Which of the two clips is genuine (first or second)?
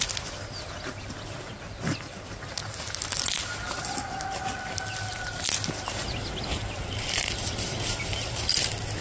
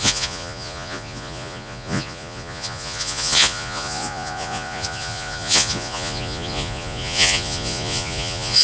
first